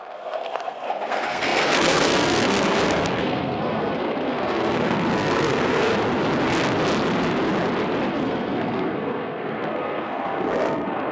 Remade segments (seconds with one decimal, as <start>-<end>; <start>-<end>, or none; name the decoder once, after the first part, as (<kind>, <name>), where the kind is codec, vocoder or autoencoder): 0.0-5.9 (codec, SNAC); 8.1-11.1